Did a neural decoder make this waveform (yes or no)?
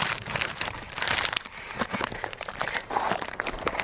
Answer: yes